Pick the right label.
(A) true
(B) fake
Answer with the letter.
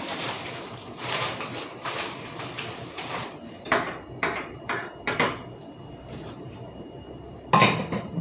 B